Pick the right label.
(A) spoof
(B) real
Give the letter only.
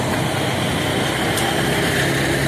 B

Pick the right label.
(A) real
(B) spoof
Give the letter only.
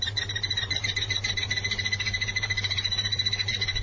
B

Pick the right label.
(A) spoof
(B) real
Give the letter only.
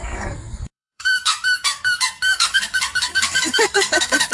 A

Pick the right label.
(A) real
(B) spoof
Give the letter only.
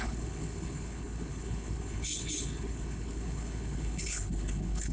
B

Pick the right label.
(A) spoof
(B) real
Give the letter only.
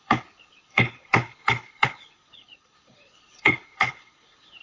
A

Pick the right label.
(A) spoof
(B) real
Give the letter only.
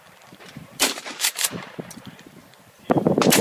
A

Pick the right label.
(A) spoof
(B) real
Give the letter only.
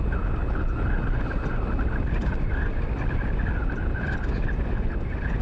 B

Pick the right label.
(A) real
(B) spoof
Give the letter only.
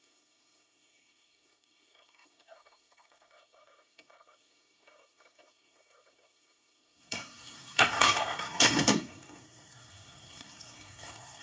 B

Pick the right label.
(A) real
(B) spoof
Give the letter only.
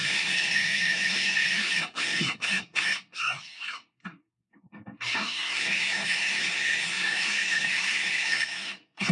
B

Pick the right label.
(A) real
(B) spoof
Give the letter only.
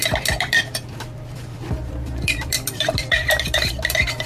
B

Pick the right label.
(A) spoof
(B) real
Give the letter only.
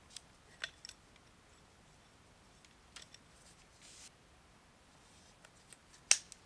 B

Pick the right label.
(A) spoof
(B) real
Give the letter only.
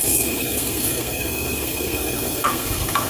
A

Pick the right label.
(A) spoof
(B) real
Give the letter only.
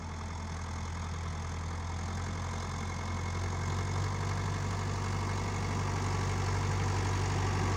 B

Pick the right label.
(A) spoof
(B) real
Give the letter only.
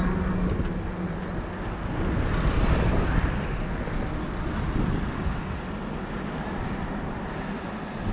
B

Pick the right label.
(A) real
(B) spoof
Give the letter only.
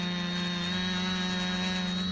A